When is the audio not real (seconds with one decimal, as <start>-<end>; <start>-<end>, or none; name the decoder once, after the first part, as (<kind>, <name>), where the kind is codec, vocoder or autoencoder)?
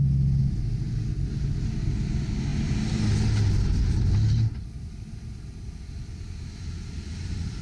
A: none